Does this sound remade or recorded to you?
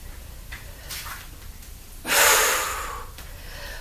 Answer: remade